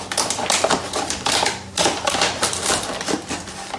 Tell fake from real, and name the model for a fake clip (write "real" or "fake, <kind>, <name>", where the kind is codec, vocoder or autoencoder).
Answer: real